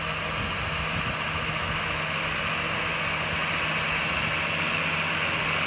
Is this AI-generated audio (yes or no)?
no